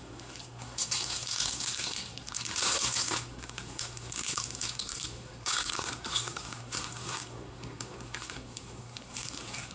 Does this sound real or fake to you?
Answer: fake